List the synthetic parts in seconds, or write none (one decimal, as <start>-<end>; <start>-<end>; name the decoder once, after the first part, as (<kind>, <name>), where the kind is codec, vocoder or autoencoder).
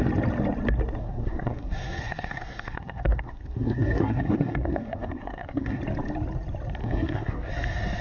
1.0-5.8 (codec, SNAC); 6.8-7.5